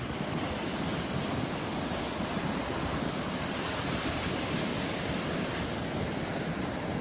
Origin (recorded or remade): recorded